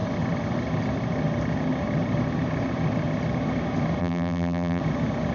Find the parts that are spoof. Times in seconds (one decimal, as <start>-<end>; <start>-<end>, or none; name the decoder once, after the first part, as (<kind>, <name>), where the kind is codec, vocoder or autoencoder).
4.0-4.8 (vocoder, BigVGAN v2)

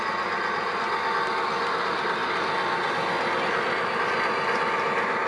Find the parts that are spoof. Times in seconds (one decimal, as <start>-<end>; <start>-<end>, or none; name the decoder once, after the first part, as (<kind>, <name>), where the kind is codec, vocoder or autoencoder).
none

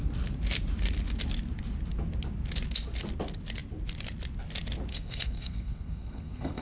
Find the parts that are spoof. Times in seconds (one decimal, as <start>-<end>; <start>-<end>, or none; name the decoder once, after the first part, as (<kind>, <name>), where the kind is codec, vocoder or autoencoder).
4.9-6.6 (codec, SNAC)